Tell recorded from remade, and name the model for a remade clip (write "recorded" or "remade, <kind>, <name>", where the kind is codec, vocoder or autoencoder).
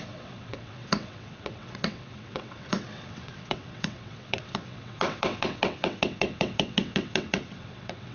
remade, vocoder, WaveNeXt